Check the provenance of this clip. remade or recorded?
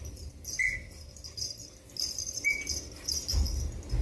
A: recorded